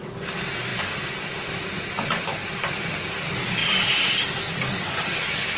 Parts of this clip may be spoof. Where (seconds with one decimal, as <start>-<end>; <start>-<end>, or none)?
none